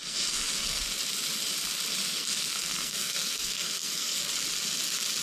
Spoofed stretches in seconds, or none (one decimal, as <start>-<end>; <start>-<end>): 0.0-0.8; 2.0-4.3